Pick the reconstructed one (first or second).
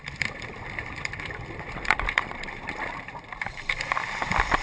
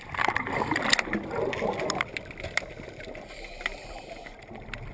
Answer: first